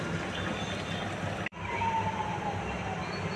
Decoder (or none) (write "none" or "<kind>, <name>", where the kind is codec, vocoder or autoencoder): vocoder, BigVGAN v2